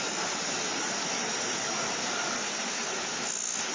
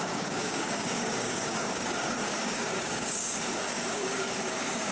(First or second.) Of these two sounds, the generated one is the second